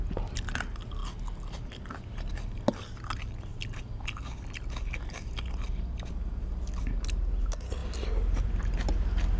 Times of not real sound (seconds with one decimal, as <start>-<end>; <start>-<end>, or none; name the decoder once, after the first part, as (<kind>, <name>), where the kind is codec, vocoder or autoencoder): none

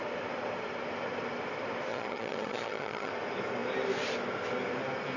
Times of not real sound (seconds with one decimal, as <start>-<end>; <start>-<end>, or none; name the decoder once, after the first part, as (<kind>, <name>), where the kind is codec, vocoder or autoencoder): 1.9-3.1 (vocoder, HiFi-GAN)

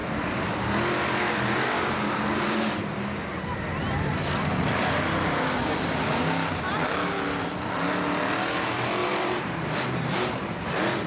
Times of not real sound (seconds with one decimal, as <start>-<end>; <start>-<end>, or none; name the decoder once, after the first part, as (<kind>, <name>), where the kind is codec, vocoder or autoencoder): 9.0-10.6 (vocoder, BigVGAN v2)

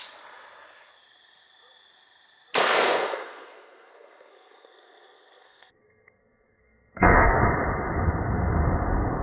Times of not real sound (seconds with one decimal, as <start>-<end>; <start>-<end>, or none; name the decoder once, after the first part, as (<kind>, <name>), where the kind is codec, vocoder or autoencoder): 2.6-7.4 (codec, SNAC)